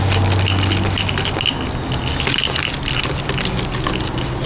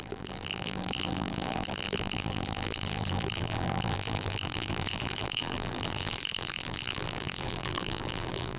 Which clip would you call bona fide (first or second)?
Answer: first